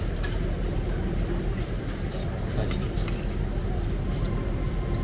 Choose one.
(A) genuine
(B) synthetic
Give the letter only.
A